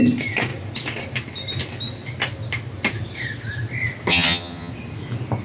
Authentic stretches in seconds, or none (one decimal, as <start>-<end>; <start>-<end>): 0.0-4.1; 4.7-5.4